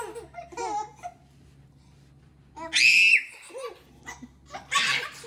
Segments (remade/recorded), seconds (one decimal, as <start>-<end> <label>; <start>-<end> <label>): 0.0-5.3 recorded